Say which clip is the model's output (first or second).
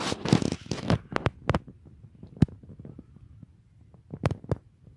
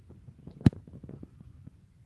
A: second